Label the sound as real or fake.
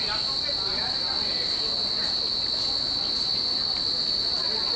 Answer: real